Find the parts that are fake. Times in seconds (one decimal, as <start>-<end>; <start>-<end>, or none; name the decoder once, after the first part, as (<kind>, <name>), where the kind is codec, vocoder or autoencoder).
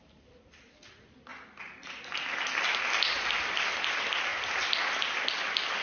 none